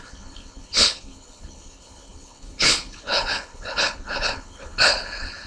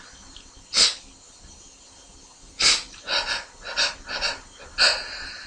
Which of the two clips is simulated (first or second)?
first